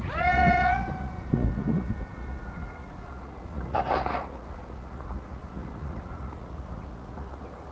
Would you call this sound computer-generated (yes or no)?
yes